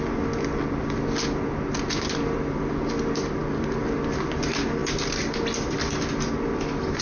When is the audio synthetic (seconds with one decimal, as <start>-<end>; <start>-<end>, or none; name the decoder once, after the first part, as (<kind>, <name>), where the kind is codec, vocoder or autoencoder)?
none